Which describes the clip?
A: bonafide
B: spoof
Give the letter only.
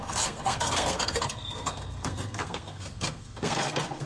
B